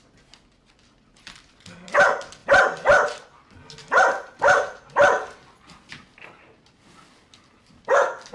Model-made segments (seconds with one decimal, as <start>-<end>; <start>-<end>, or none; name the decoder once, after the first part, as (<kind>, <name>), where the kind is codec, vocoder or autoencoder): none